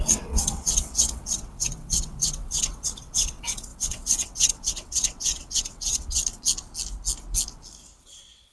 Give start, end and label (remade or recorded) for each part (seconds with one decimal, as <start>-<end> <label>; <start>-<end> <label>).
0.0-6.2 remade; 6.2-8.0 recorded; 8.0-8.5 remade